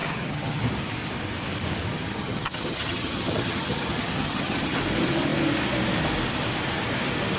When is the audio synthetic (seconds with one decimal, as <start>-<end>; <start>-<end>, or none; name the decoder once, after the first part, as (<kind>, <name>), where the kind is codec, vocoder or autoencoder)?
0.0-0.6 (vocoder, HiFi-GAN); 1.9-4.8